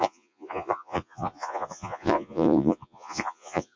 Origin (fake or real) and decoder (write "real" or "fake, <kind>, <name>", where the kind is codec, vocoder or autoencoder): fake, vocoder, Vocos